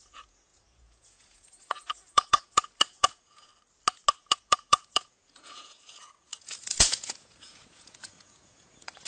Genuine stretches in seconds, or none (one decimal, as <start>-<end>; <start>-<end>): 3.5-4.2